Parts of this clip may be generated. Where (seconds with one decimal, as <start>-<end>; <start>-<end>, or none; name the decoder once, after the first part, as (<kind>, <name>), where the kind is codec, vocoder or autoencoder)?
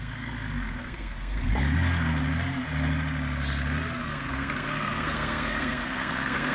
0.0-2.1 (codec, SNAC); 4.0-6.5